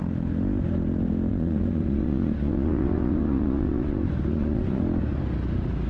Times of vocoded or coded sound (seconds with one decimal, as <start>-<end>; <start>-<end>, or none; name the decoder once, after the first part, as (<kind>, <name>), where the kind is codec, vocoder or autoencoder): 1.3-4.8 (vocoder, Vocos)